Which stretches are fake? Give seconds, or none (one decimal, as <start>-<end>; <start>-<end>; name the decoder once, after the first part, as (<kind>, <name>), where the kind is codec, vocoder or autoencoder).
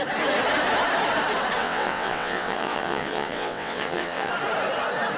1.6-4.3 (vocoder, WaveNeXt)